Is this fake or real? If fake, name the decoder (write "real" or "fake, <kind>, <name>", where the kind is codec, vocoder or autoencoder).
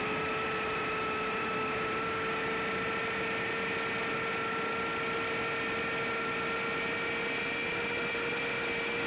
real